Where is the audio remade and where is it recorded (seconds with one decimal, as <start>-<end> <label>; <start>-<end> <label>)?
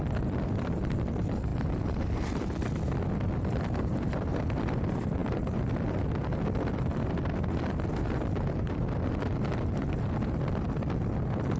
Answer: 0.0-11.6 recorded